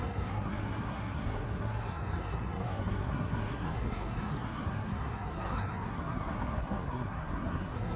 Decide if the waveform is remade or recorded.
remade